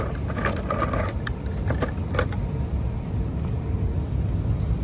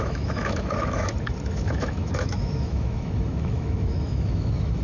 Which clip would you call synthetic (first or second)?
second